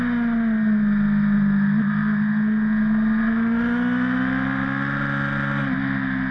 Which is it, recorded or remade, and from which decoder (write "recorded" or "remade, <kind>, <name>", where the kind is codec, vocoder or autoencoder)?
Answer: recorded